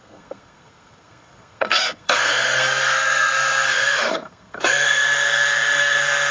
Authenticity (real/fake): fake